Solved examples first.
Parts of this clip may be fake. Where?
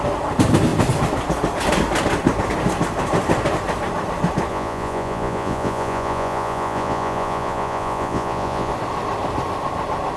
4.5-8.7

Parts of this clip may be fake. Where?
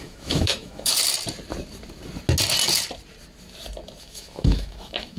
0.0-0.9; 4.0-5.2